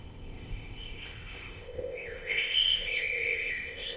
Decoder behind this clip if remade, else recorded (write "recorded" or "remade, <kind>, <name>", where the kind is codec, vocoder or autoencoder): remade, codec, ZipCodec